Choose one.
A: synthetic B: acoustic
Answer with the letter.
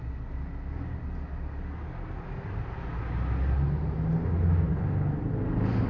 B